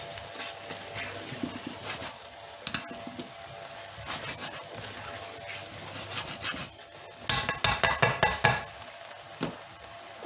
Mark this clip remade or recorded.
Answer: recorded